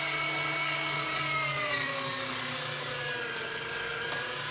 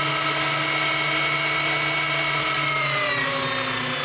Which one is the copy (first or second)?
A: first